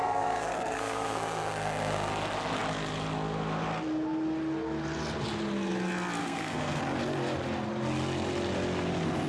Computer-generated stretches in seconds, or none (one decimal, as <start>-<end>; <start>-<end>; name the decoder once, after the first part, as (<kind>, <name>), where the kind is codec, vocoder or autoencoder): 0.0-2.1 (codec, SNAC); 6.2-6.8